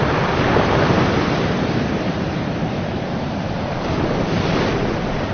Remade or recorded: remade